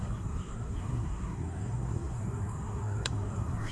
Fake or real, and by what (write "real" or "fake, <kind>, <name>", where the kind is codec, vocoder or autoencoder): fake, codec, SNAC